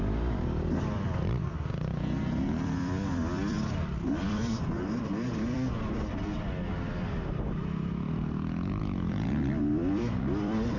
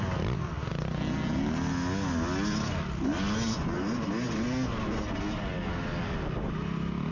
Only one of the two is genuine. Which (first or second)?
second